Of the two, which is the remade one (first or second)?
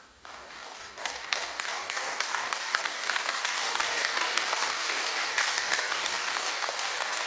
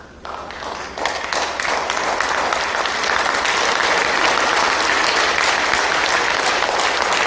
first